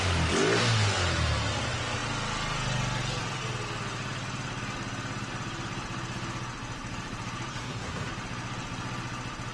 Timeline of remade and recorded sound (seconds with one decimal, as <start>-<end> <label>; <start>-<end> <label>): 0.0-7.5 recorded; 7.5-8.1 remade; 8.1-9.5 recorded